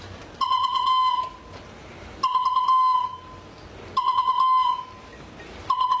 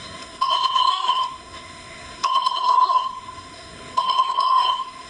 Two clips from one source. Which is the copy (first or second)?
second